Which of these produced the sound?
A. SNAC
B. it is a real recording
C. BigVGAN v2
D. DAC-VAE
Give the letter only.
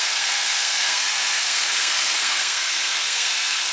A